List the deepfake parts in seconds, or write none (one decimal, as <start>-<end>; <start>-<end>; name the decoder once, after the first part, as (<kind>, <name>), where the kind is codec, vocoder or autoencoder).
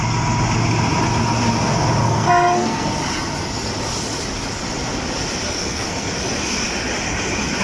2.0-2.9 (codec, SNAC); 5.6-6.2